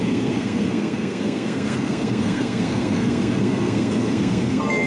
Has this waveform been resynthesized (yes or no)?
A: yes